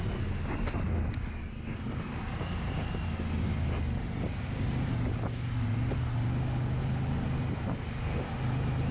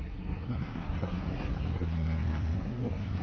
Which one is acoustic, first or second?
first